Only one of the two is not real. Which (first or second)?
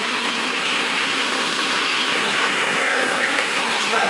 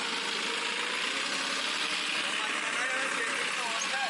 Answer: first